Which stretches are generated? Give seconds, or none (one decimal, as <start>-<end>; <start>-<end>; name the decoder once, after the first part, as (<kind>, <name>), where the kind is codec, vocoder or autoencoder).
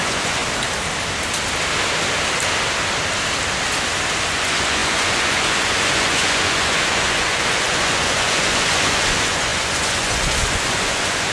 0.0-0.4 (vocoder, Vocos); 4.3-11.3